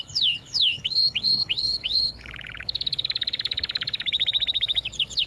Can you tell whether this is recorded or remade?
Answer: remade